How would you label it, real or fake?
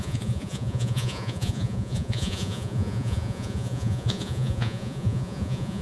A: fake